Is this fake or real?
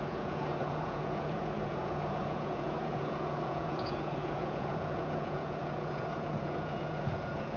fake